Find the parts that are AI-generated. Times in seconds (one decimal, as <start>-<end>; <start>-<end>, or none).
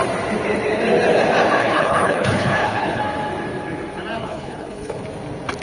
1.6-3.0; 4.2-5.0